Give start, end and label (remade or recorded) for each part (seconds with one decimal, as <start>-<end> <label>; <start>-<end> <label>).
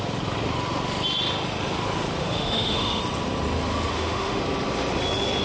0.0-2.2 recorded; 2.2-3.0 remade; 3.0-3.9 recorded; 3.9-4.4 remade; 4.4-5.4 recorded